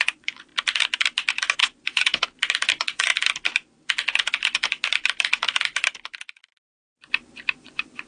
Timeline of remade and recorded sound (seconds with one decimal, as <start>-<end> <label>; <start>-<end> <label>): 0.0-0.5 remade; 0.5-1.6 recorded; 1.6-2.1 remade; 2.1-2.7 recorded; 2.7-3.1 remade; 3.1-7.6 recorded; 7.6-8.1 remade